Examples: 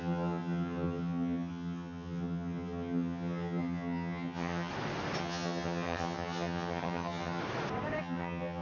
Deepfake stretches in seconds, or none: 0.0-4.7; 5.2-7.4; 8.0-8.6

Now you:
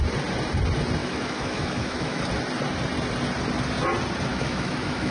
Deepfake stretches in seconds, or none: 1.0-2.2; 4.3-5.1

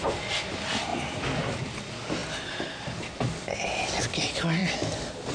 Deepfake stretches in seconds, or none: none